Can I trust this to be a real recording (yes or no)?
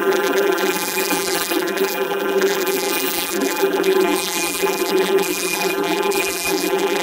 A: no